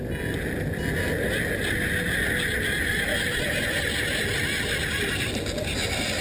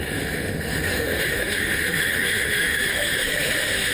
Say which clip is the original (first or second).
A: first